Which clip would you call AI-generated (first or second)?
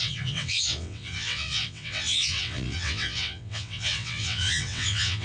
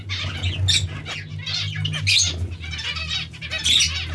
first